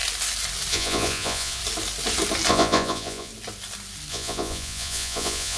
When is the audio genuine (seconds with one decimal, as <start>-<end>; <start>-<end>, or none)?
0.0-0.7; 1.6-2.5; 3.3-4.1